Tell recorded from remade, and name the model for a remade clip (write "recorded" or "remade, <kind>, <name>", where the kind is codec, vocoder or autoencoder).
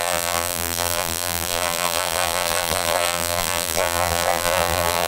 remade, vocoder, BigVGAN v2